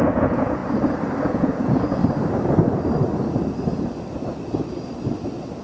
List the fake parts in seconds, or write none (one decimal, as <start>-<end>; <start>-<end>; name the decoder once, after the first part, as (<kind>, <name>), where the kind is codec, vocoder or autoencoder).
0.0-0.6 (vocoder, Vocos); 1.3-2.0